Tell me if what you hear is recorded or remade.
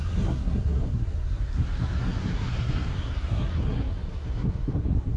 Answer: remade